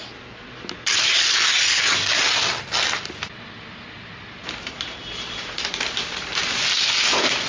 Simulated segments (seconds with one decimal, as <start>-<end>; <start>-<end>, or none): none